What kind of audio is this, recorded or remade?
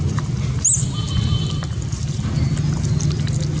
recorded